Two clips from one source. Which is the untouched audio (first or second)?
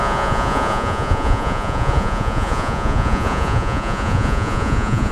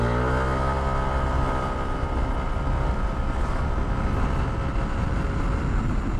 second